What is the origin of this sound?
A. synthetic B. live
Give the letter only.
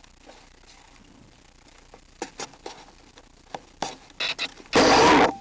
B